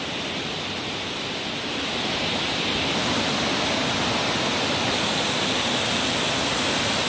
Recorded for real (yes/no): yes